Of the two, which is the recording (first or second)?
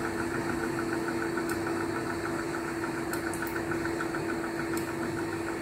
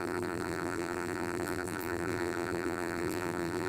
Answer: first